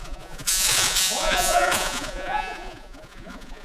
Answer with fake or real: fake